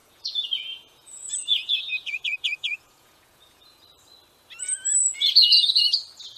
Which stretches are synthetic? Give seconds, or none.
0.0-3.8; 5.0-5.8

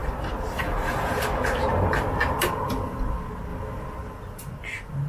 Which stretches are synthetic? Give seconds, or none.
0.0-2.5

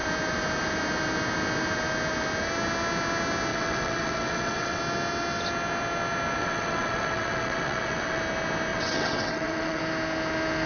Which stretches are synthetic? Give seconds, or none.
3.5-4.8; 6.4-8.2; 8.7-9.8

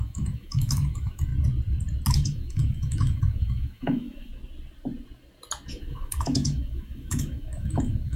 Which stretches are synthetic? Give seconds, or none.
0.0-1.3; 2.1-4.3; 5.8-8.2

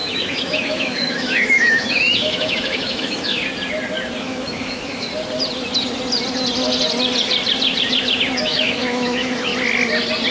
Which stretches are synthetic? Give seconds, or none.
0.0-3.4; 4.2-5.1; 8.4-9.5

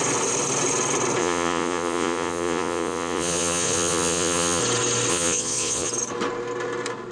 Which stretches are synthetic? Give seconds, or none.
1.2-4.6; 5.1-5.9

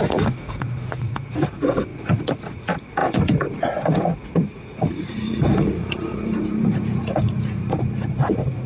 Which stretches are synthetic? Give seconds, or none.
0.0-8.7